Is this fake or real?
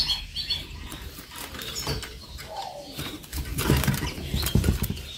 fake